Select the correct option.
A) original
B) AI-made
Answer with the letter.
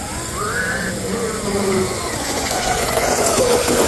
B